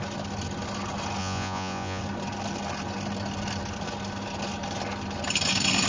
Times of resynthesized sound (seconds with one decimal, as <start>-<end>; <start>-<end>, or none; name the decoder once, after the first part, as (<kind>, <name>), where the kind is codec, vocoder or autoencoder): 1.2-2.0 (vocoder, Vocos)